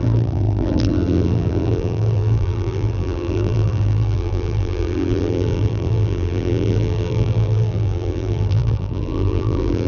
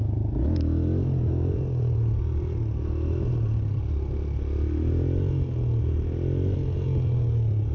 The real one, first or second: second